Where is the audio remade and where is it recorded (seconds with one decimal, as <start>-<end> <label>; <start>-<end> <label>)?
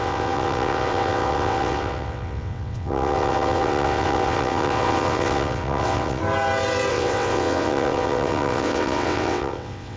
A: 0.0-6.2 remade; 6.2-6.9 recorded; 6.9-10.0 remade